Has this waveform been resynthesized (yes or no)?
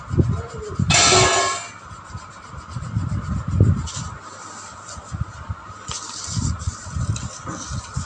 no